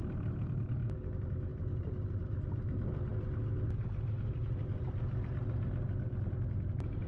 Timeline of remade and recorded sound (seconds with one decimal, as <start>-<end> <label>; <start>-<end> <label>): 0.0-1.5 recorded; 1.5-2.3 remade; 2.3-3.1 recorded; 3.1-5.4 remade; 5.4-7.1 recorded